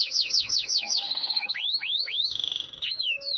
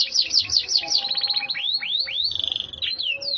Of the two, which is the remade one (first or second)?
first